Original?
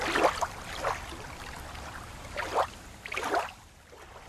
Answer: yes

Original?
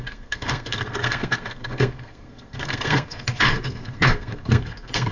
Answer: no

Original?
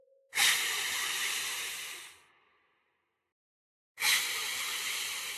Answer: yes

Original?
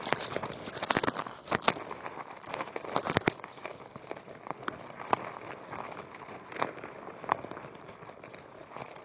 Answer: yes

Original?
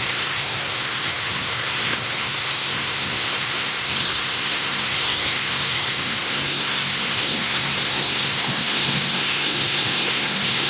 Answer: no